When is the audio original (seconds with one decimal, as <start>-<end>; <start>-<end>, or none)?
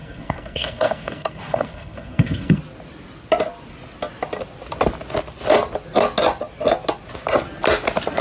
2.6-8.2